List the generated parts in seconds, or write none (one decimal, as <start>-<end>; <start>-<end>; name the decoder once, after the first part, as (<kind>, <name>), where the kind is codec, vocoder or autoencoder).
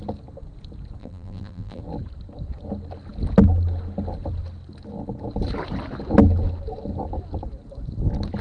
1.0-1.8 (vocoder, BigVGAN v2)